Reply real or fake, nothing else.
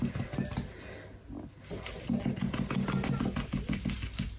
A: real